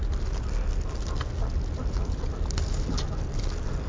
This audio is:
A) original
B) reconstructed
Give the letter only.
A